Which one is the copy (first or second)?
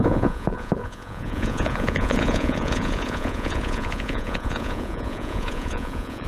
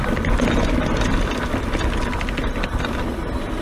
first